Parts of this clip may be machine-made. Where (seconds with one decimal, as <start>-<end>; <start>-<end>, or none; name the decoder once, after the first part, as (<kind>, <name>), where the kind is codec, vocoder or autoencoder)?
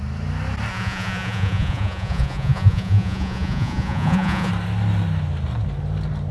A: 0.7-4.5 (vocoder, Vocos)